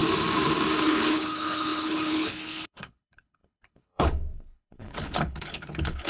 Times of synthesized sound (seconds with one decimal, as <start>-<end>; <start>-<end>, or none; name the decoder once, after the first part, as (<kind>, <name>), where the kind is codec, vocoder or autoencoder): 0.8-6.1 (codec, HILCodec)